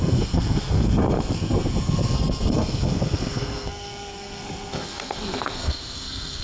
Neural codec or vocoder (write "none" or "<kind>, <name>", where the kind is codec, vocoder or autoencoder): codec, SNAC